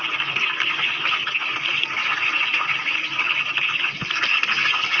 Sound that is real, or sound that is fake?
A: real